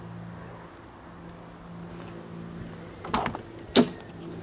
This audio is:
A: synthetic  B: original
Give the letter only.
B